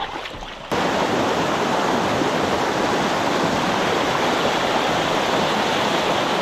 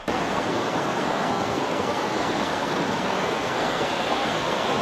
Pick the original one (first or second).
first